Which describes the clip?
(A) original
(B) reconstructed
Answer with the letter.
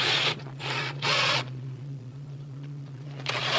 B